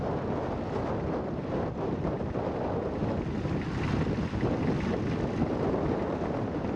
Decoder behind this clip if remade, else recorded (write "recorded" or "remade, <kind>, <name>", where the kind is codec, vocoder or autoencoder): recorded